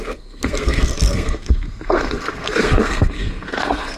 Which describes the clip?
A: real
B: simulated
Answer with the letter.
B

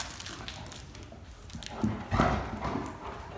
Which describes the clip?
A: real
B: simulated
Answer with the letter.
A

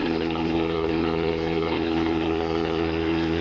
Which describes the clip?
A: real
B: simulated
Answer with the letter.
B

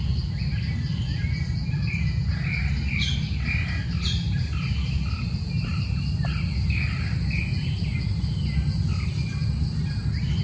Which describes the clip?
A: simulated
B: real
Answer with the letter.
B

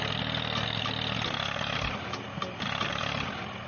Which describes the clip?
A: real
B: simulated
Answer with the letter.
A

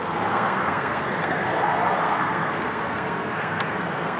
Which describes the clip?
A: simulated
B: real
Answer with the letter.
A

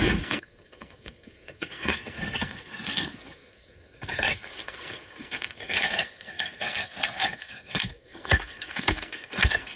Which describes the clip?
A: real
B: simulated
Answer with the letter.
B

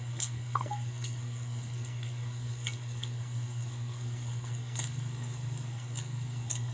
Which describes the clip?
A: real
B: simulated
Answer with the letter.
B